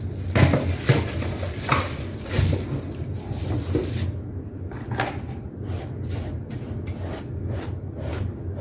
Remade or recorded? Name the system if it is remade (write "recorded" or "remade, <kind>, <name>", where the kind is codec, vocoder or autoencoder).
recorded